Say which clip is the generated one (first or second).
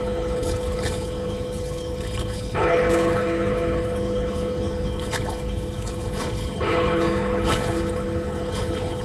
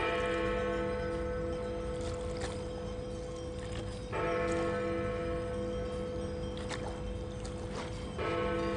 first